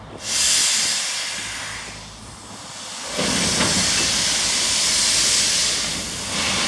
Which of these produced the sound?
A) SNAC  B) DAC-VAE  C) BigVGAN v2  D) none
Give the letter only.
D